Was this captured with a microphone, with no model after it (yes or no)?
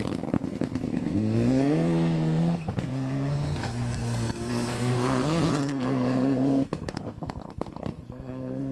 no